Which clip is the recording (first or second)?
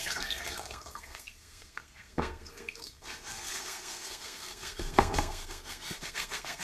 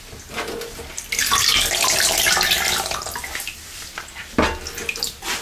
second